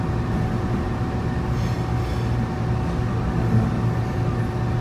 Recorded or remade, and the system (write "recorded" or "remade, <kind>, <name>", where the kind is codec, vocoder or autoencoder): recorded